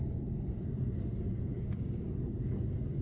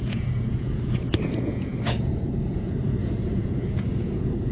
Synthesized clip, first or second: second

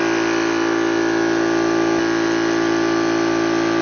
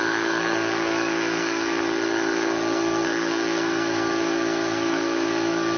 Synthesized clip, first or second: second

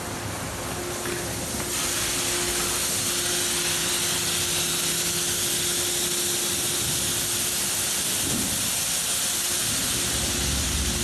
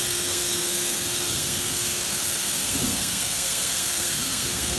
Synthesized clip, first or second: second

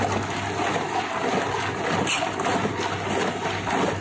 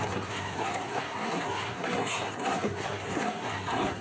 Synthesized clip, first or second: second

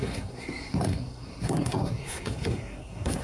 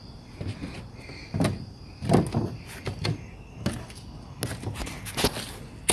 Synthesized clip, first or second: first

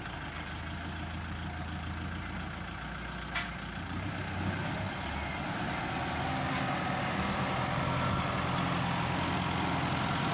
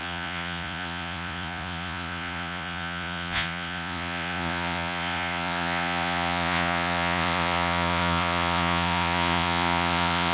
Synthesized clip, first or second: second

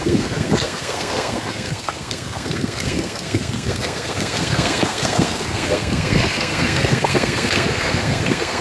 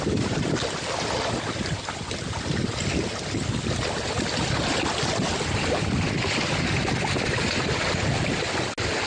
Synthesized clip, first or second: first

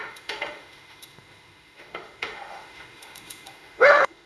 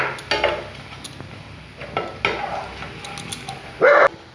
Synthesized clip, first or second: first